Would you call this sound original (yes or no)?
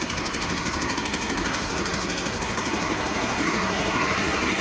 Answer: no